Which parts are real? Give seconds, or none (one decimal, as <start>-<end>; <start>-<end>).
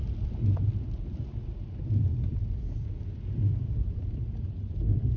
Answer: 2.4-3.6